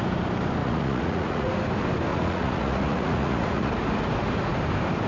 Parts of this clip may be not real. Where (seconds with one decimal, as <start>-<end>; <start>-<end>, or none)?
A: 0.6-1.5; 2.1-3.7